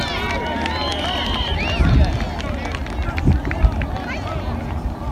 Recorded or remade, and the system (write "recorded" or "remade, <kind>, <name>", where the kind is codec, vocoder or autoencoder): recorded